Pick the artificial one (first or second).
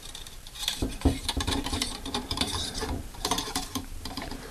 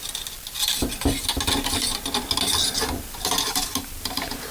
first